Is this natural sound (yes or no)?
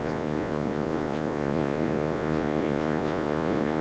no